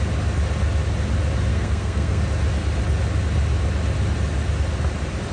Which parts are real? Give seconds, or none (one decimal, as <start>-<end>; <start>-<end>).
0.0-1.5; 2.2-5.3